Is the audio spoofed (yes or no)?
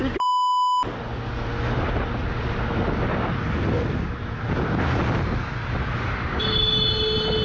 no